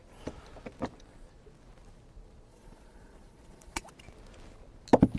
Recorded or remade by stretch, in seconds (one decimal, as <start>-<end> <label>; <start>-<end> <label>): 0.0-2.5 recorded; 2.5-3.9 remade; 3.9-5.2 recorded